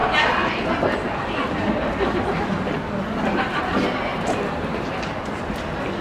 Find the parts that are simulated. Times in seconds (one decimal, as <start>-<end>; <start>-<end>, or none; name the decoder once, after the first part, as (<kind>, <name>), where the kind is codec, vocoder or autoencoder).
4.1-5.4 (vocoder, BigVGAN v2)